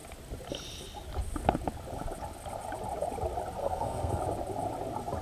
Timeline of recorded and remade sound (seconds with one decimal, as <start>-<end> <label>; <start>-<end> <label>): 0.0-3.6 recorded; 3.6-4.2 remade; 4.2-5.2 recorded